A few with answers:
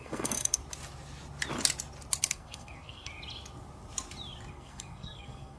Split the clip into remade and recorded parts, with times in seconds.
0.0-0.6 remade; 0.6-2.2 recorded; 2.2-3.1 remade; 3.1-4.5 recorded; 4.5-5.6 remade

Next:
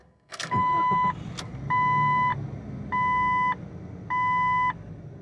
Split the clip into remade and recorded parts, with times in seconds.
0.0-0.6 remade; 0.6-5.2 recorded

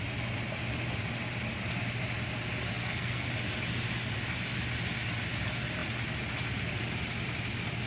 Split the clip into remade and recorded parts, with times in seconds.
0.0-2.8 recorded; 2.8-3.3 remade; 3.3-7.9 recorded

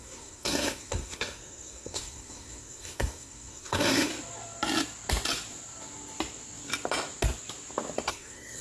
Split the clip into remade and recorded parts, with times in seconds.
0.0-4.1 remade; 4.1-8.1 recorded; 8.1-8.6 remade